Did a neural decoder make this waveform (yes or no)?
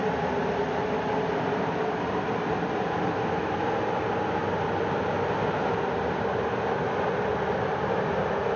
no